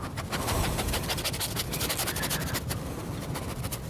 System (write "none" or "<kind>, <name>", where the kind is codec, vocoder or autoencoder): none